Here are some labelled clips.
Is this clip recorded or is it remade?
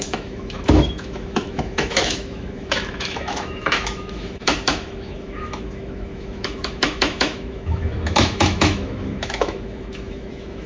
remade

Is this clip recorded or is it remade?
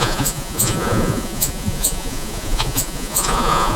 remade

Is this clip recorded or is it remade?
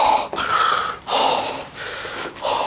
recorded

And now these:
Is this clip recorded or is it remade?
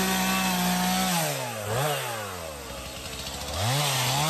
recorded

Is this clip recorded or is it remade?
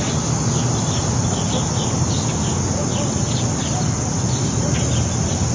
recorded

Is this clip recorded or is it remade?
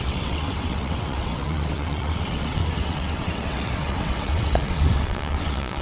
remade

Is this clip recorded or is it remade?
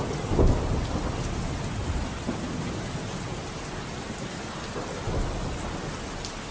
recorded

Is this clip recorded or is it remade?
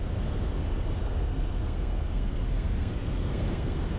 remade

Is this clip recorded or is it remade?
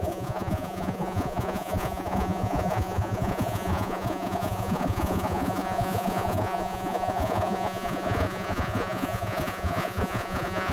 remade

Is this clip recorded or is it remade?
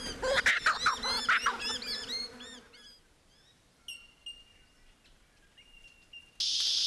recorded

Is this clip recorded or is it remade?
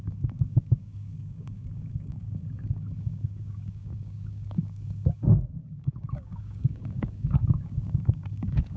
remade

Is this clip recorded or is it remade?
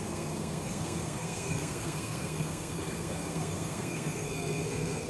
remade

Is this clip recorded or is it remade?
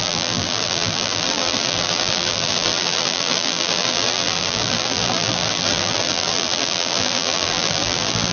remade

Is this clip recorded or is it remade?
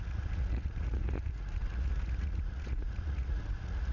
remade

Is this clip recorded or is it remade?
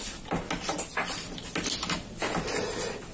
recorded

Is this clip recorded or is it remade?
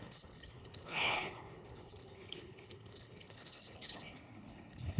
remade